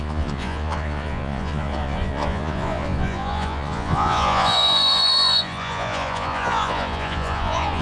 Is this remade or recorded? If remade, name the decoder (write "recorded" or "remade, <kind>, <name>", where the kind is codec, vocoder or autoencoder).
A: remade, vocoder, Vocos